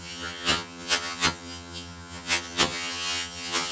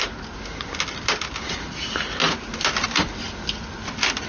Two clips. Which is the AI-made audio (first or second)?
first